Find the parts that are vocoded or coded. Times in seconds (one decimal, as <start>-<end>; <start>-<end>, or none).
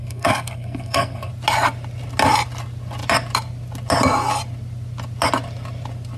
0.0-1.3